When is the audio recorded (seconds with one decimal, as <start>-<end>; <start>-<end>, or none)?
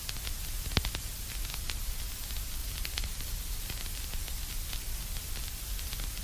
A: 0.0-2.6; 3.7-6.2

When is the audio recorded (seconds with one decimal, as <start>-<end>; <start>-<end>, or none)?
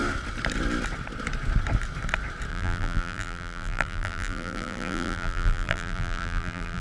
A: 0.0-2.5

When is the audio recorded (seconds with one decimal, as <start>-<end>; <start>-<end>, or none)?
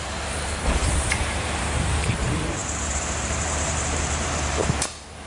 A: none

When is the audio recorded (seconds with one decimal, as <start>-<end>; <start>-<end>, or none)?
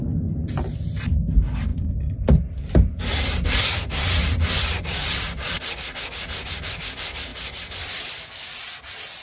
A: 1.1-1.7; 4.6-7.3; 8.1-9.2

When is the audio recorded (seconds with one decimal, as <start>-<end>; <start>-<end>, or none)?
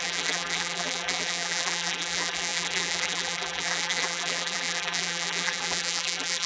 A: none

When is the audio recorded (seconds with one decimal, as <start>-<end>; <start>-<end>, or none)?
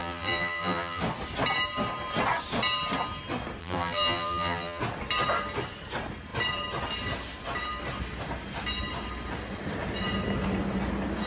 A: 1.0-3.6; 4.8-11.3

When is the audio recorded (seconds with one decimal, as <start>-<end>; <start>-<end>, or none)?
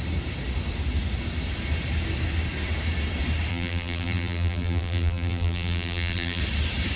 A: 0.0-3.5; 6.4-7.0